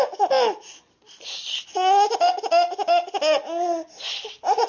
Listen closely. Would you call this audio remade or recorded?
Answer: recorded